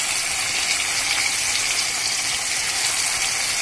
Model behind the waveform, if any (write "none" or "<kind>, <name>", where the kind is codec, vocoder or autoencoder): none